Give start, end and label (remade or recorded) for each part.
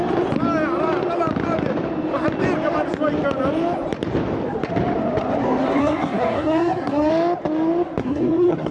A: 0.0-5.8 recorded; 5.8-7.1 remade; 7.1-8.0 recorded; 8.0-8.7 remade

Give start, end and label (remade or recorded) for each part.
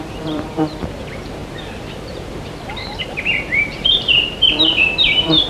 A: 0.0-5.5 remade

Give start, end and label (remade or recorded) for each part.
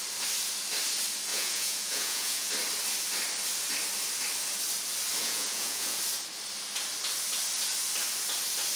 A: 0.0-1.3 recorded; 1.3-2.5 remade; 2.5-5.2 recorded; 5.2-6.0 remade; 6.0-8.8 recorded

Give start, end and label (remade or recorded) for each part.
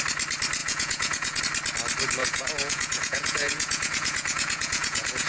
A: 0.0-0.6 recorded; 0.6-1.4 remade; 1.4-2.2 recorded; 2.2-5.3 remade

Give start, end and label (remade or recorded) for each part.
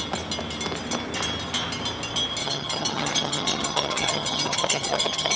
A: 0.0-2.4 recorded; 2.4-5.4 remade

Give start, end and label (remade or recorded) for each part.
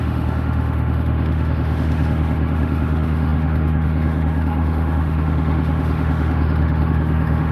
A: 0.0-7.5 remade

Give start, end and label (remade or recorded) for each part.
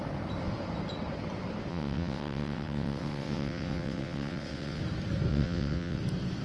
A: 0.0-1.7 recorded; 1.7-4.8 remade; 4.8-5.3 recorded; 5.3-6.0 remade; 6.0-6.4 recorded